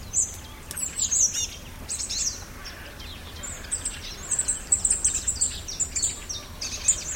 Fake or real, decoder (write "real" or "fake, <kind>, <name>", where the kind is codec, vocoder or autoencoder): real